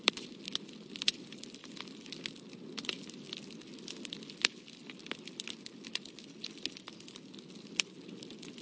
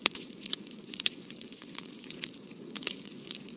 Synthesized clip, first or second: second